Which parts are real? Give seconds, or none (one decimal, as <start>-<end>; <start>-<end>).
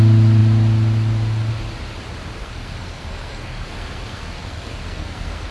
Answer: 0.0-2.4